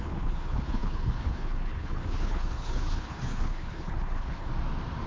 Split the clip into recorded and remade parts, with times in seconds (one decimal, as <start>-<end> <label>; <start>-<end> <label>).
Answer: 0.0-4.5 remade; 4.5-5.1 recorded